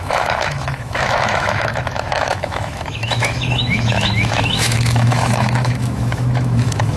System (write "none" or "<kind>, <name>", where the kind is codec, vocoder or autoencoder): autoencoder, DAC-VAE